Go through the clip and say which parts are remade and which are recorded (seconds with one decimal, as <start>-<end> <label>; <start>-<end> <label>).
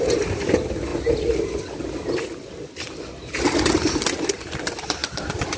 0.0-0.9 remade; 0.9-4.3 recorded; 4.3-5.6 remade